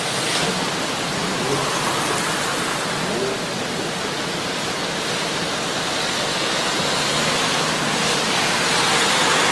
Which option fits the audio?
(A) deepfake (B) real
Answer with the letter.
B